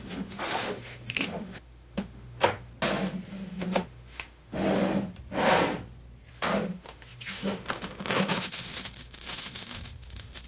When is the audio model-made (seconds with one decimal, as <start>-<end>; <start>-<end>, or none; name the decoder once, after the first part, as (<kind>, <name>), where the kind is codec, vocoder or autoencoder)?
0.0-2.7 (autoencoder, DAC-VAE); 3.3-4.9; 6.3-10.5